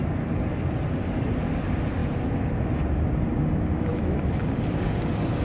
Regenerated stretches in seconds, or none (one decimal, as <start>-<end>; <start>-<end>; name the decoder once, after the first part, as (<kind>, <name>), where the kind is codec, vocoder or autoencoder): 3.9-4.4 (autoencoder, DAC-VAE)